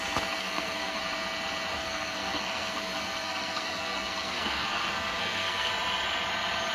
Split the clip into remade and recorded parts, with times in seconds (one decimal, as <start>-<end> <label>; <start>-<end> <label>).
0.0-0.4 recorded; 0.4-1.0 remade; 1.0-1.7 recorded; 1.7-5.7 remade; 5.7-6.7 recorded